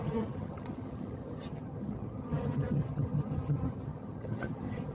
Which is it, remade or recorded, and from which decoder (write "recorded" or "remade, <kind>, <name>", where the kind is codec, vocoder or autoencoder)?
remade, vocoder, HiFi-GAN